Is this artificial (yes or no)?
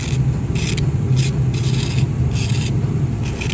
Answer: no